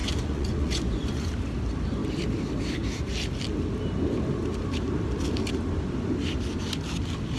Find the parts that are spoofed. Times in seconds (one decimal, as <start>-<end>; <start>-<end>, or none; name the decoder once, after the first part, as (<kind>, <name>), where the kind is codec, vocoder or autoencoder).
0.0-1.3 (vocoder, Vocos)